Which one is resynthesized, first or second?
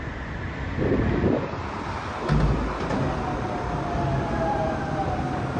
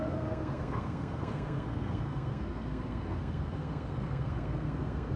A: second